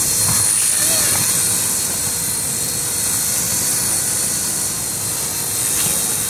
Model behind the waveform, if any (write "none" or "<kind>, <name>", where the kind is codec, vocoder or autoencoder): none